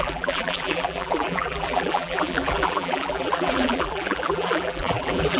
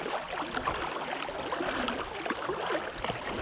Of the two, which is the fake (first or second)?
first